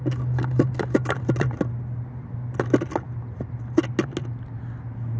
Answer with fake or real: real